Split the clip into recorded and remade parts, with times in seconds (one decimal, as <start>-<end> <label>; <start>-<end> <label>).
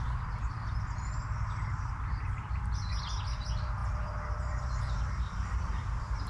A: 0.0-6.3 recorded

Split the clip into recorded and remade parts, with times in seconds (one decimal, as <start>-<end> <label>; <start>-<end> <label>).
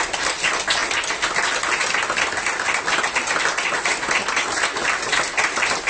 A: 0.0-5.1 recorded; 5.1-5.9 remade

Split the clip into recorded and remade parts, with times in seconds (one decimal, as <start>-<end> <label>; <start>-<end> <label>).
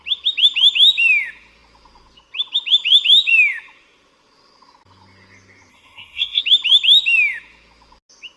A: 0.0-5.7 recorded; 5.7-6.4 remade; 6.4-8.4 recorded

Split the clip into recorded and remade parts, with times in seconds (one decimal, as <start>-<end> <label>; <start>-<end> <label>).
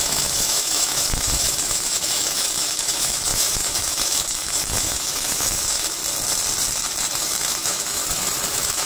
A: 0.0-6.0 remade; 6.0-7.2 recorded; 7.2-8.0 remade; 8.0-8.5 recorded; 8.5-8.9 remade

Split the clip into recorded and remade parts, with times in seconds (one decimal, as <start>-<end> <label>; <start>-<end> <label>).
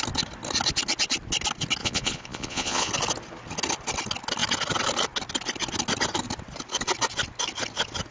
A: 0.0-1.8 recorded; 1.8-2.9 remade; 2.9-8.1 recorded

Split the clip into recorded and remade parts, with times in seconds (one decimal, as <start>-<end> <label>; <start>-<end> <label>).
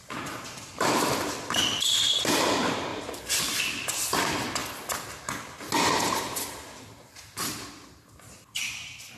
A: 0.0-2.9 recorded; 2.9-3.6 remade; 3.6-9.2 recorded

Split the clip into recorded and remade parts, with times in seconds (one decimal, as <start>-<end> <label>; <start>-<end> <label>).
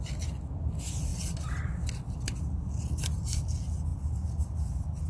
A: 0.0-5.1 recorded